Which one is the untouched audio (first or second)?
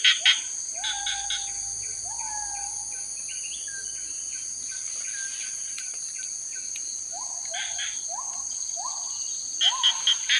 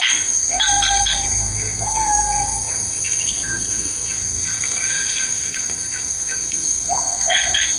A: first